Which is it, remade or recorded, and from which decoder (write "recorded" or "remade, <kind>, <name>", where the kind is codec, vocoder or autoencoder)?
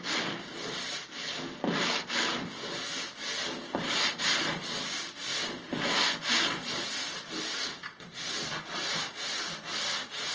recorded